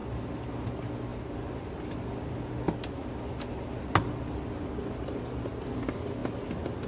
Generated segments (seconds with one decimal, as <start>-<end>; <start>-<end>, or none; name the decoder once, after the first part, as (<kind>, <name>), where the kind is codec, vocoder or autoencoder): none